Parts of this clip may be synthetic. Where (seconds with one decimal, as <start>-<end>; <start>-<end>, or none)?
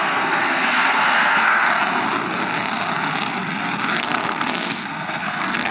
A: 0.0-1.6; 4.0-5.7